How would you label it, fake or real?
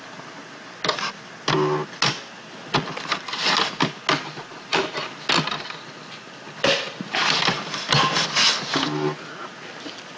real